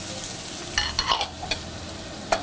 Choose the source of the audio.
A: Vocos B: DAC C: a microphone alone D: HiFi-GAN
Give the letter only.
C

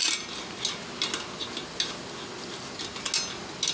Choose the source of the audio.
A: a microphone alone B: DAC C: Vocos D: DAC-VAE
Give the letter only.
A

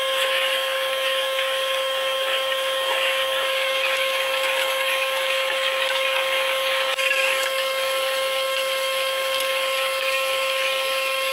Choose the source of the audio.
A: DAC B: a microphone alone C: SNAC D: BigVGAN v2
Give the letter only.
A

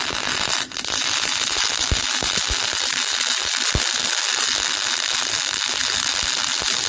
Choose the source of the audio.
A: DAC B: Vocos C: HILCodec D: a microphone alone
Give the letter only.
D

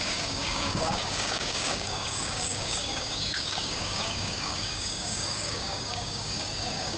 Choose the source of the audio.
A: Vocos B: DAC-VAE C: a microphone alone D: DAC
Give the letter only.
D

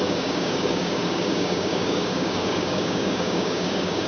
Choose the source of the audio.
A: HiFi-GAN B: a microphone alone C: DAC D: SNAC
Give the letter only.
C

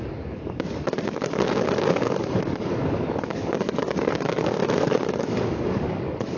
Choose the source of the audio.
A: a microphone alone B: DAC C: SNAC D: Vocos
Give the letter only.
B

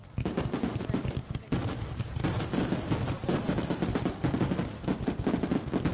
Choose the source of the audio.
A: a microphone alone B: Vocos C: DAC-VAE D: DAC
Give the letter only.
A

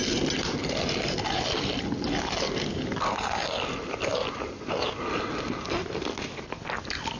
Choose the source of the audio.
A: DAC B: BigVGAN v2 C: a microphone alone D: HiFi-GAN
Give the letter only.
C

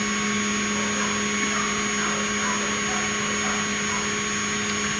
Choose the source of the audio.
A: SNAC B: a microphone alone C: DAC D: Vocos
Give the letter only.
B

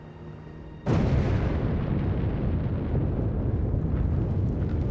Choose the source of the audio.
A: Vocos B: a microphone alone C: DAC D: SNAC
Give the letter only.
B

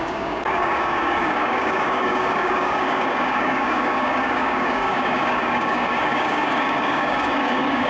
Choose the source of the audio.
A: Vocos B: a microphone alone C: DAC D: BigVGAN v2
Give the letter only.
C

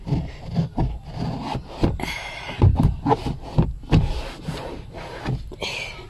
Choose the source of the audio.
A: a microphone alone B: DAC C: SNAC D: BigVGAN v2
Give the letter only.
A